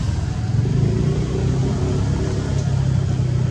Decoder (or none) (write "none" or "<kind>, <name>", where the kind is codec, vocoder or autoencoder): none